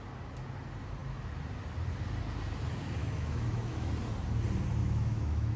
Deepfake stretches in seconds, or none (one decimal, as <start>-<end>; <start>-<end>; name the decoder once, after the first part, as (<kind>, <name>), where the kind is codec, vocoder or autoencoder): 3.0-3.9 (autoencoder, DAC-VAE); 4.8-5.6